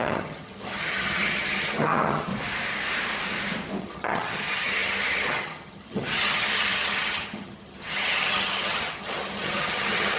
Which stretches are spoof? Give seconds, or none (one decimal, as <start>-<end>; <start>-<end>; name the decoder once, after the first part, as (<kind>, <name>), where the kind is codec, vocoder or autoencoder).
0.0-2.3 (vocoder, HiFi-GAN); 3.8-10.2

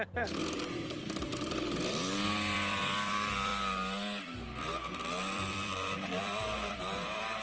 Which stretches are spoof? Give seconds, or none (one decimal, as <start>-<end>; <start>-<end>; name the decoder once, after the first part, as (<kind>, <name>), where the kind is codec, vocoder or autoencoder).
0.0-7.4 (vocoder, BigVGAN v2)

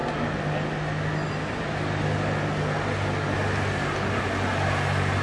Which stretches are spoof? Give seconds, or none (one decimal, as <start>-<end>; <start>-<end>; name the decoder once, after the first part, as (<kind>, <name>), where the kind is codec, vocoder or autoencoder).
none

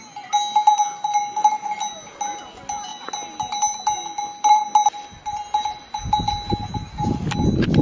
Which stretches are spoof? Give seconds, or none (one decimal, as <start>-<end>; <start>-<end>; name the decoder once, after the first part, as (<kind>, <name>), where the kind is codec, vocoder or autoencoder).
none

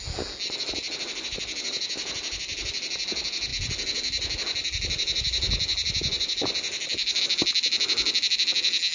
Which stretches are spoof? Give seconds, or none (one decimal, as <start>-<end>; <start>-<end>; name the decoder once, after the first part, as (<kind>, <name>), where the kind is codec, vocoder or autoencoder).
none

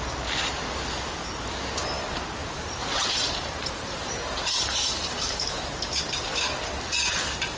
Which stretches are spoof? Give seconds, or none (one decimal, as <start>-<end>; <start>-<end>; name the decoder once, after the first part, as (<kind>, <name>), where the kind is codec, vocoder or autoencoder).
2.4-6.6 (vocoder, BigVGAN v2)

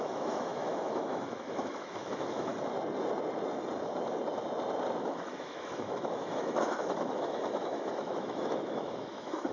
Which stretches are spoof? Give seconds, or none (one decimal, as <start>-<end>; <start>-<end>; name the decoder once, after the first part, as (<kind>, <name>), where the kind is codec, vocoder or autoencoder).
0.0-2.5 (autoencoder, DAC-VAE); 5.0-9.5